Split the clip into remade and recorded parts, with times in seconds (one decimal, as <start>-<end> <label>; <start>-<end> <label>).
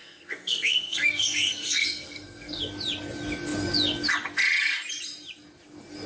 0.0-2.6 remade; 2.6-6.1 recorded